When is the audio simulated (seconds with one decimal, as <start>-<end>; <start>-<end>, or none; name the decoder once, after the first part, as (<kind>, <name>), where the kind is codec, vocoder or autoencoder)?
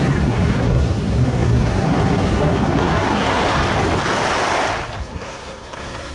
0.0-3.4 (codec, SNAC); 5.0-6.1